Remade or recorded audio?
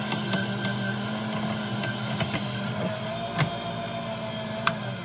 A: recorded